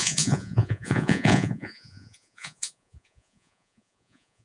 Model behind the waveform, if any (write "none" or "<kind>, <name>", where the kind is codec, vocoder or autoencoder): vocoder, Vocos